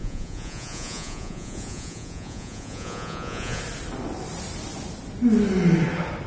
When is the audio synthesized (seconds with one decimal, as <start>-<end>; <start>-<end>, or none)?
0.0-3.6

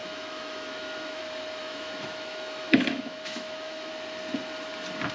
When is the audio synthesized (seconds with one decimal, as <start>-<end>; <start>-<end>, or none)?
0.0-1.2; 1.6-3.9

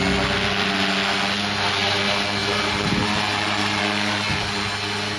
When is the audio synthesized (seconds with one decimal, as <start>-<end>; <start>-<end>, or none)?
2.4-3.8